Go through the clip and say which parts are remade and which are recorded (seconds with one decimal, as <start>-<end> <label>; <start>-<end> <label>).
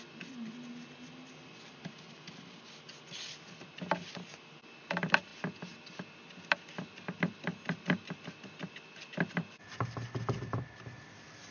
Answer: 0.0-11.5 recorded